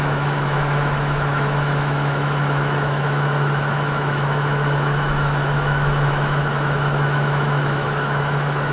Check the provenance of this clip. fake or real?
fake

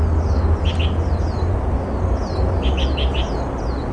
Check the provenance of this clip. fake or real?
real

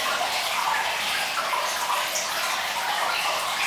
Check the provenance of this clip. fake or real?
real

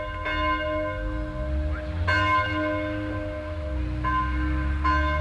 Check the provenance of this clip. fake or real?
real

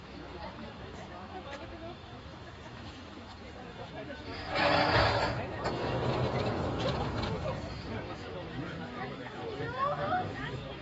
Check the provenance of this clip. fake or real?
fake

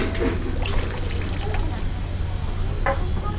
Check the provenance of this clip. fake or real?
real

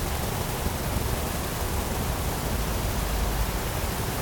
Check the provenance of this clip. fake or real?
real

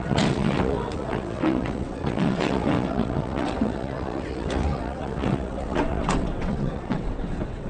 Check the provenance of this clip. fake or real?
fake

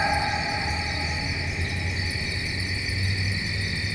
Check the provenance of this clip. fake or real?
real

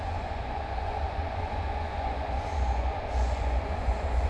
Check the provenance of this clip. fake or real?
fake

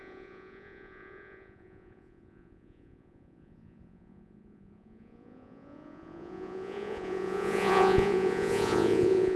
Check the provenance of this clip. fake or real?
fake